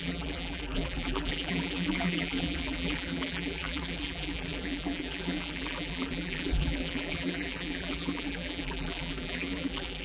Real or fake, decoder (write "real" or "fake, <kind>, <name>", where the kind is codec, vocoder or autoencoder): fake, vocoder, BigVGAN v2